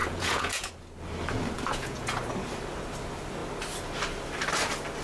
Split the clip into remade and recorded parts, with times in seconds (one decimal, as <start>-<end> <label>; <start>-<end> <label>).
0.0-0.7 remade; 0.7-1.7 recorded; 1.7-2.2 remade; 2.2-5.0 recorded